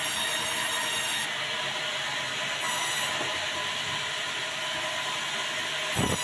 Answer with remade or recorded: recorded